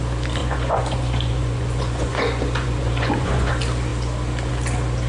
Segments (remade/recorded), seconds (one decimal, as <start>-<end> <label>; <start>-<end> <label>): 0.0-0.4 recorded; 0.4-3.5 remade; 3.5-5.1 recorded